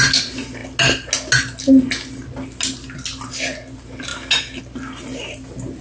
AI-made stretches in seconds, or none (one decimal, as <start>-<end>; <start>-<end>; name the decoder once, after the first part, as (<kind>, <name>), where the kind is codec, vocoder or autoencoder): none